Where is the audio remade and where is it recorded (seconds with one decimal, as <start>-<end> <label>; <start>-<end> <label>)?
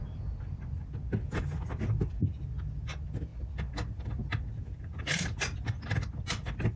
0.0-6.8 recorded